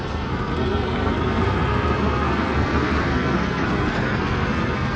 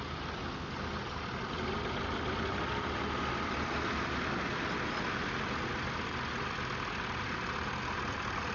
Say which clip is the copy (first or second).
first